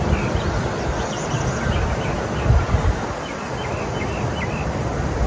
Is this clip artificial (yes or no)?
no